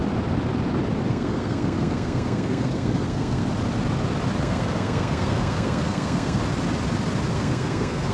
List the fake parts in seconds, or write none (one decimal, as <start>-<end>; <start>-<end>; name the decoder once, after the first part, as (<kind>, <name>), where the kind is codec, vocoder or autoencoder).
1.1-3.4 (codec, SNAC); 4.4-6.4; 7.3-8.1